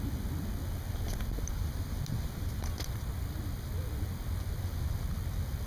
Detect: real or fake real